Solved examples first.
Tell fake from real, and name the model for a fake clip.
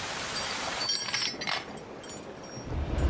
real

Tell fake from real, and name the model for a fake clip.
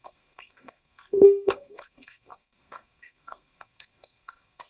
fake, codec, SNAC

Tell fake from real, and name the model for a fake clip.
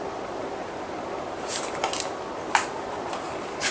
real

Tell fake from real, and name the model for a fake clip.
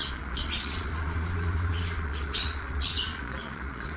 fake, vocoder, Vocos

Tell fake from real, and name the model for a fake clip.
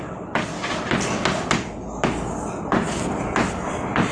real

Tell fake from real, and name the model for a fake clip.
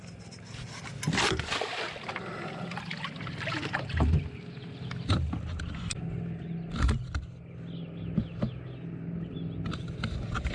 real